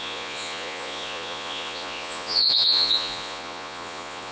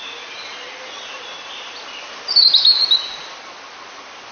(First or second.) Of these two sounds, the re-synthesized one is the first